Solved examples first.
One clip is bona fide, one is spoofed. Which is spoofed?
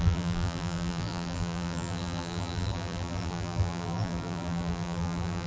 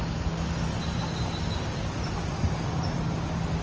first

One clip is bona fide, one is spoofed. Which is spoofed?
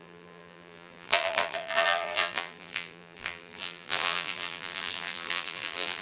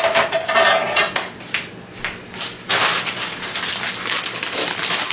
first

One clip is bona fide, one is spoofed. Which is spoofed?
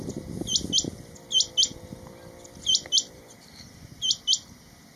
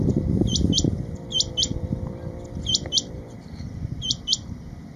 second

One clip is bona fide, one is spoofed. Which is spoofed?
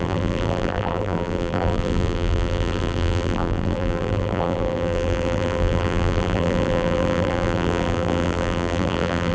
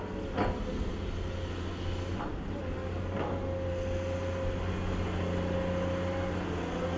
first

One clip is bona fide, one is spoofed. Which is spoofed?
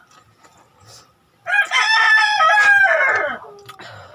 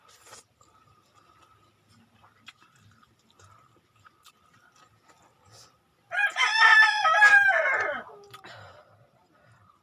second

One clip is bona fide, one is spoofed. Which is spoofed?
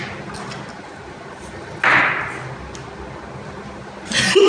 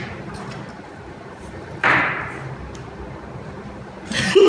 second